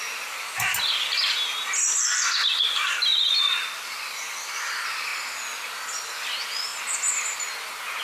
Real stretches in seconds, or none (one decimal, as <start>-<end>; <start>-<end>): 5.1-6.2; 6.7-7.3